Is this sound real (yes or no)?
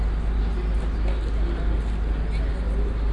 yes